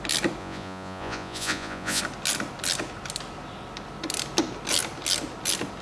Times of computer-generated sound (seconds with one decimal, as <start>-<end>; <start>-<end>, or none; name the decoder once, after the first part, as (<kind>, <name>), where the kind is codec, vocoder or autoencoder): 0.4-2.0 (vocoder, Vocos)